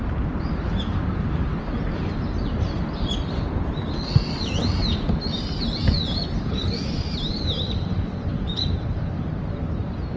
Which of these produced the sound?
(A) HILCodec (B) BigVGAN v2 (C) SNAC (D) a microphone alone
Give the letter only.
D